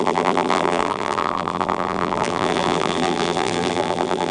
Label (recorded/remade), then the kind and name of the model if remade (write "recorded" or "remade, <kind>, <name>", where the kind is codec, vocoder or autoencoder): remade, vocoder, BigVGAN v2